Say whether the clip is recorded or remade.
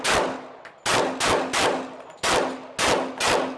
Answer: recorded